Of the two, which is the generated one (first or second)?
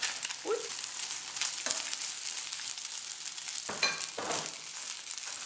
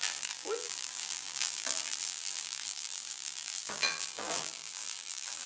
second